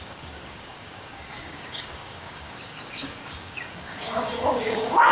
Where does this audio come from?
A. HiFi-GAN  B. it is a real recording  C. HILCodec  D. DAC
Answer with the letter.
D